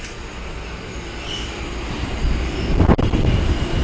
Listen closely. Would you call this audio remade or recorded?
recorded